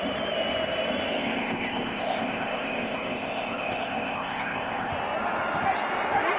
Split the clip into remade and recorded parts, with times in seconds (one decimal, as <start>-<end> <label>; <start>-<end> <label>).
0.0-1.1 recorded; 1.1-4.9 remade; 4.9-6.4 recorded